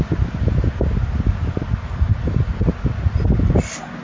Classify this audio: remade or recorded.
recorded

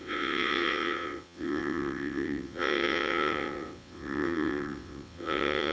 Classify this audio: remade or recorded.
remade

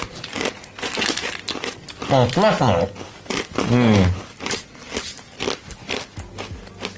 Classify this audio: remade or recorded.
recorded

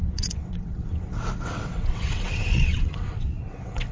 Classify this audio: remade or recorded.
remade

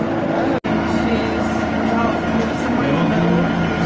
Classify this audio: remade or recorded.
recorded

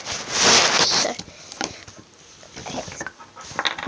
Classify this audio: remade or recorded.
recorded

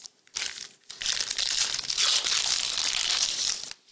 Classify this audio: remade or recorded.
recorded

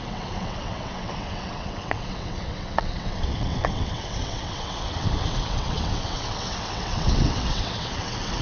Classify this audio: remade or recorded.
remade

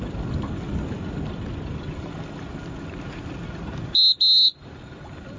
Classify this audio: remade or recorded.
recorded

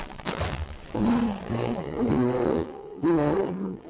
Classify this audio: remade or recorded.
remade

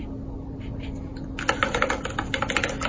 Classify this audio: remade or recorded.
recorded